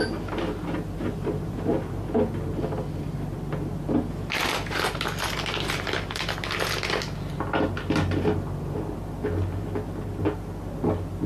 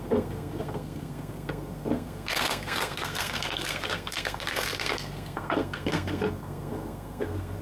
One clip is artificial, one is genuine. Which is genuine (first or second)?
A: first